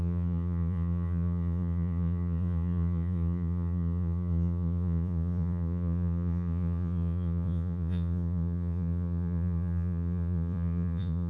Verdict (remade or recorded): remade